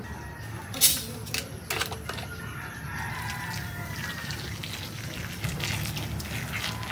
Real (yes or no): yes